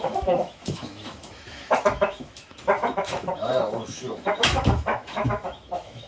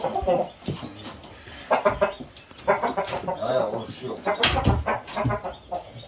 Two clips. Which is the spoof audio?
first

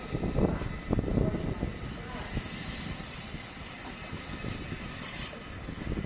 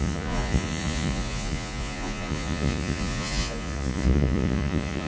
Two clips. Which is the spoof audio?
second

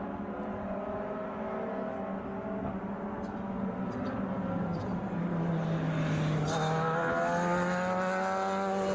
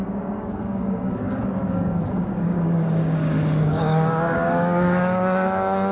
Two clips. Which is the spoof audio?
second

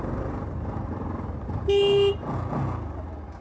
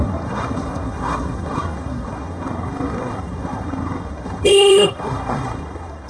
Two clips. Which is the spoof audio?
second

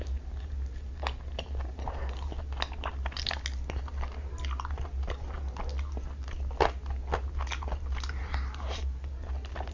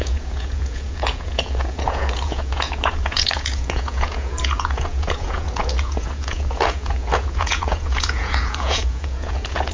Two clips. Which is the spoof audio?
second